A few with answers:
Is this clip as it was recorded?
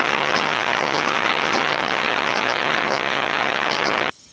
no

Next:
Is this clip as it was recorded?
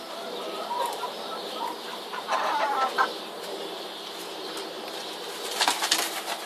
no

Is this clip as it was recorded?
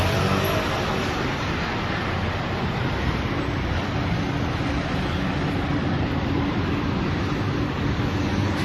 yes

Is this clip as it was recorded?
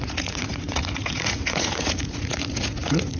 no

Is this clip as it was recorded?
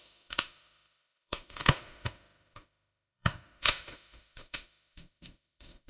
no